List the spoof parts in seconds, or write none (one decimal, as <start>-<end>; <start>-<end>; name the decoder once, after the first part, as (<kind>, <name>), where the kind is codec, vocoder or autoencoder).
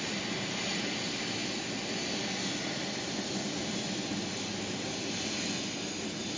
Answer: none